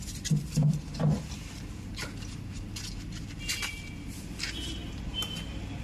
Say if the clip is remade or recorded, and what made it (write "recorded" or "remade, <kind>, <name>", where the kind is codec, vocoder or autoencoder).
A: recorded